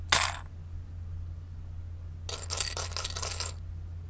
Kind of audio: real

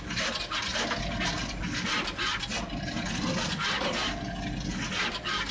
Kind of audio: real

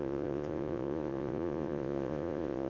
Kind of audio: fake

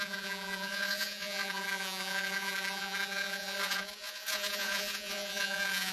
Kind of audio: fake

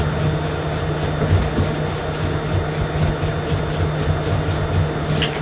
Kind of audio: real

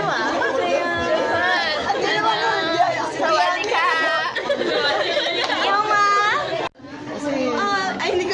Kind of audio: real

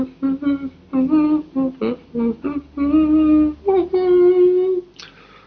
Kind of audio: real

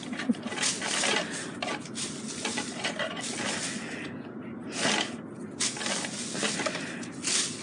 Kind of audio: real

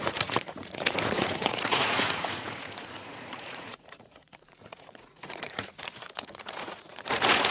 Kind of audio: fake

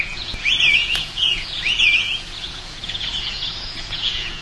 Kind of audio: fake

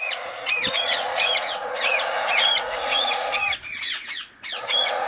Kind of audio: fake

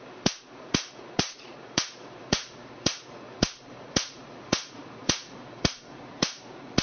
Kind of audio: fake